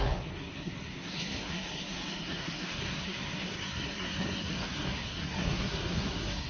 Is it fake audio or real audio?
fake